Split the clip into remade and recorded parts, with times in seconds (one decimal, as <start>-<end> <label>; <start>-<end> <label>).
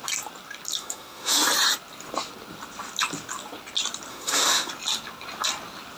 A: 0.0-0.8 recorded; 0.8-1.4 remade; 1.4-4.1 recorded; 4.1-4.7 remade; 4.7-6.0 recorded